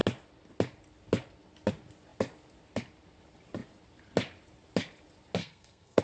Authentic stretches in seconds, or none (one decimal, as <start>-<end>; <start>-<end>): 0.0-5.4